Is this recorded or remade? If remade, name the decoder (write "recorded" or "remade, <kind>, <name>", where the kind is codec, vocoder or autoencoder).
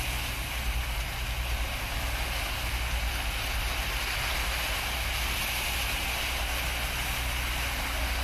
recorded